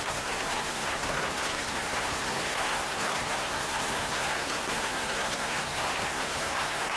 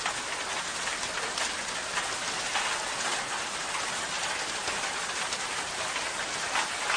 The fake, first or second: first